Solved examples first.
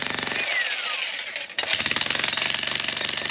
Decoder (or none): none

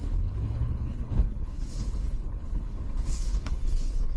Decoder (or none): codec, HILCodec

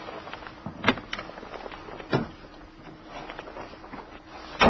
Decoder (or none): none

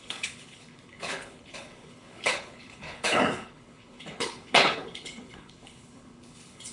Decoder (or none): codec, HILCodec